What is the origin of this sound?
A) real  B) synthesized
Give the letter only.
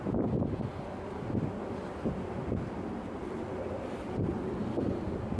A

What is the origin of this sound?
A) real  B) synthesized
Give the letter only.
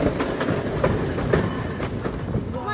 A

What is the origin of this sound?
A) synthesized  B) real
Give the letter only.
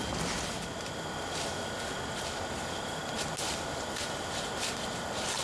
B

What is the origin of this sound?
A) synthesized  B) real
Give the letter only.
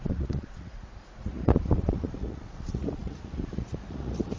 A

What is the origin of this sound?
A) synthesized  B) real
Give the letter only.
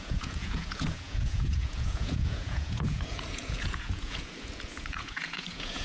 A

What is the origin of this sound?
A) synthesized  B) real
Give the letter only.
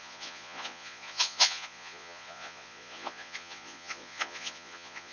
A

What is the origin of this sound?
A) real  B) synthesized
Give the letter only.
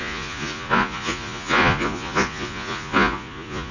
B